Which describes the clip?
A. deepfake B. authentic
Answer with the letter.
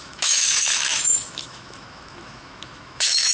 A